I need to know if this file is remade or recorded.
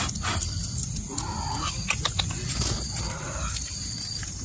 recorded